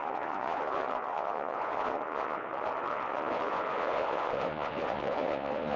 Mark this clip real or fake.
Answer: fake